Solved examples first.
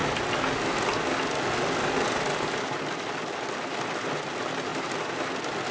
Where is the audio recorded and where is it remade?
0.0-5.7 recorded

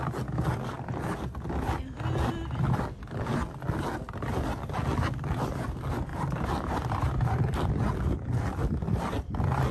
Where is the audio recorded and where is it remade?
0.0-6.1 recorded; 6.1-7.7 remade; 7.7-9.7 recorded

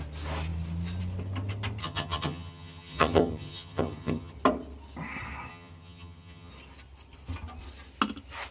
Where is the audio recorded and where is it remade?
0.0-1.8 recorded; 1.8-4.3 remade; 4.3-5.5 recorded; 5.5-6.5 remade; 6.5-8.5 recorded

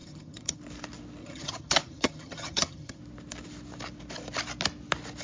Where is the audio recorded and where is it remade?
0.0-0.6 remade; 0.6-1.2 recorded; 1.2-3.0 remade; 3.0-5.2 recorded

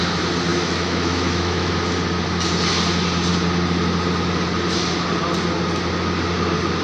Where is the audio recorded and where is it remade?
0.0-0.5 recorded; 0.5-1.7 remade; 1.7-6.8 recorded

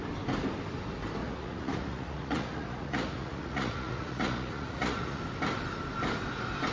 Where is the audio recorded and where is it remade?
0.0-1.2 recorded; 1.2-5.2 remade; 5.2-6.7 recorded